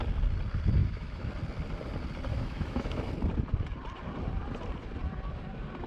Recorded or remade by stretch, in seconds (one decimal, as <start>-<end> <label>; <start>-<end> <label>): 0.0-0.8 recorded; 0.8-1.3 remade; 1.3-2.3 recorded; 2.3-3.1 remade; 3.1-5.9 recorded